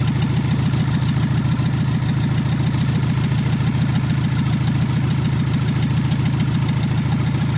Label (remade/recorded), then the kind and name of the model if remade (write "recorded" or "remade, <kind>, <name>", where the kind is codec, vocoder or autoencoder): recorded